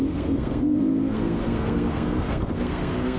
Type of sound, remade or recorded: remade